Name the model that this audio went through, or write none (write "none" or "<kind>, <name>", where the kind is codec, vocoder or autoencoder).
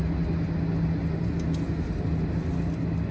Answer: none